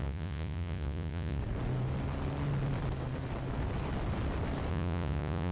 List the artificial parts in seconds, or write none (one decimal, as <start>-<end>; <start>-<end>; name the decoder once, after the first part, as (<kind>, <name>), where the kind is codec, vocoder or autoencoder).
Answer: 0.0-1.4 (vocoder, Vocos); 4.7-5.5